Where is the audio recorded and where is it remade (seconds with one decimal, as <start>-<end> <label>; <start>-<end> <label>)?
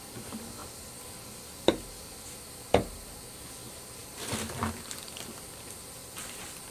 0.0-4.0 recorded; 4.0-5.1 remade; 5.1-6.0 recorded; 6.0-6.7 remade